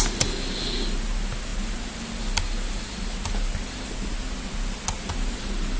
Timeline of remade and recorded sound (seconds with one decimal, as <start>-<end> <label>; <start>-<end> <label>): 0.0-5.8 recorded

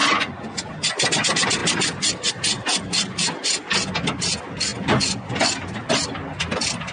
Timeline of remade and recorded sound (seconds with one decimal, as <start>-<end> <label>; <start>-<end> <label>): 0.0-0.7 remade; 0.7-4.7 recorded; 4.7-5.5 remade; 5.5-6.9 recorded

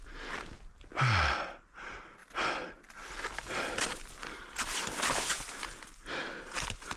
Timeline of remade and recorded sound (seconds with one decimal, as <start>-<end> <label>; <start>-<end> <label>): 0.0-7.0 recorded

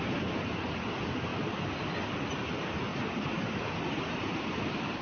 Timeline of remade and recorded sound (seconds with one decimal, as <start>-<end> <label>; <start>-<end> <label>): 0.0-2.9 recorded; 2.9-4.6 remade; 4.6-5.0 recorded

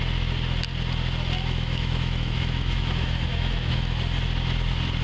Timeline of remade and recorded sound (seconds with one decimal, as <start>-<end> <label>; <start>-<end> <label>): 0.0-1.4 recorded; 1.4-4.0 remade; 4.0-5.0 recorded

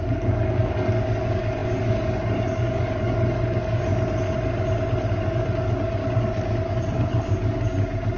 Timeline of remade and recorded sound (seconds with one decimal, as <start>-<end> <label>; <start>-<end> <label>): 0.0-3.9 remade; 3.9-5.1 recorded; 5.1-6.0 remade; 6.0-6.5 recorded; 6.5-8.2 remade

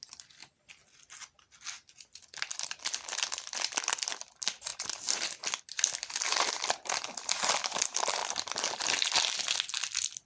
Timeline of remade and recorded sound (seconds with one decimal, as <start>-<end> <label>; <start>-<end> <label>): 0.0-10.3 recorded

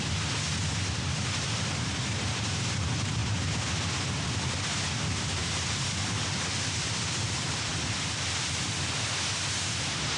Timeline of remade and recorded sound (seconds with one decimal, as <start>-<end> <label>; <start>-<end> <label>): 0.0-5.4 recorded; 5.4-8.7 remade; 8.7-10.2 recorded